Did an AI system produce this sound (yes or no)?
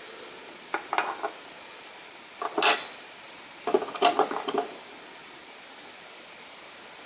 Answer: no